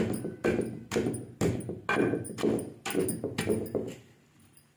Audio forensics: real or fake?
real